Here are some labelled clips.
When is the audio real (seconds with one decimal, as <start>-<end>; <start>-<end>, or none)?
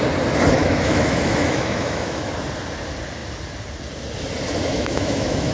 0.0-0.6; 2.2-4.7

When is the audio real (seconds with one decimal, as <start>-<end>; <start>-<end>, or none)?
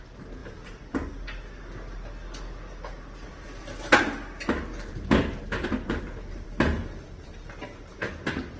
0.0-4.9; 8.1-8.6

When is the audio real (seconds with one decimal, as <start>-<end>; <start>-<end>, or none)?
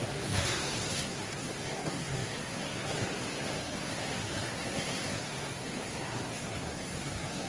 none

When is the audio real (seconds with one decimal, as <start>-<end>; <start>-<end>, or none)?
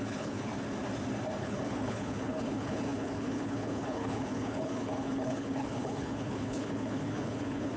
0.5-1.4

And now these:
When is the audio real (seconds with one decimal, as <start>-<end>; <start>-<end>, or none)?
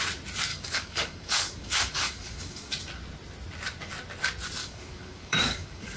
0.0-0.5; 2.7-4.6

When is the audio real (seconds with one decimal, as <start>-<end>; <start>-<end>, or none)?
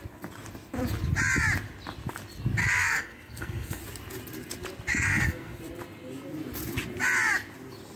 0.0-2.6; 3.8-4.9; 5.6-8.0